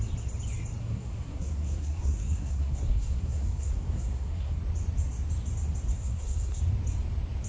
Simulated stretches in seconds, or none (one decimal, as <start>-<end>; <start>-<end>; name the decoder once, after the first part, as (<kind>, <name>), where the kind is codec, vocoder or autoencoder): 0.8-4.6 (codec, SNAC); 5.9-6.6